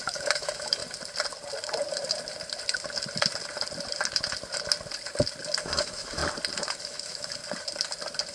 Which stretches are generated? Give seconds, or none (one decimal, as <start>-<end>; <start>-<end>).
0.0-0.8; 5.6-6.2; 6.7-7.4